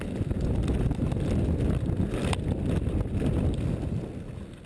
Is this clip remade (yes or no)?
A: no